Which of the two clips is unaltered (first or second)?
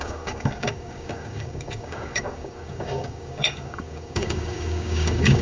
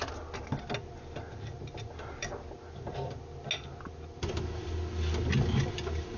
second